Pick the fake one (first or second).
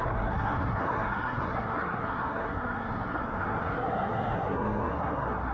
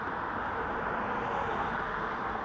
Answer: first